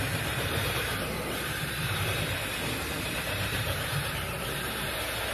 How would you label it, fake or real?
fake